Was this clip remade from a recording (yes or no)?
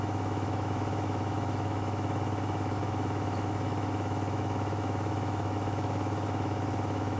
yes